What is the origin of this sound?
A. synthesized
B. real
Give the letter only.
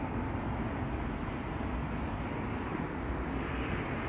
B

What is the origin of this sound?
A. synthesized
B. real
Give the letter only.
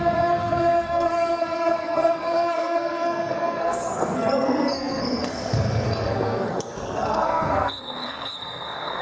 A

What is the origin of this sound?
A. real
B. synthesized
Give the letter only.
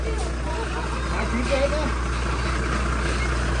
A